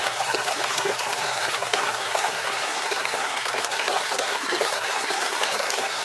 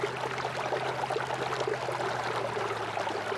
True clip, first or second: second